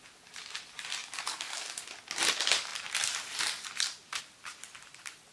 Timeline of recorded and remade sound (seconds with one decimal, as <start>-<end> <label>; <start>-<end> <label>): 0.0-1.0 recorded; 1.0-1.8 remade; 1.8-5.3 recorded